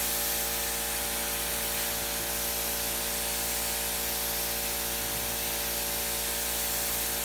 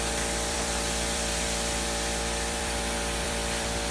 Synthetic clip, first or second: second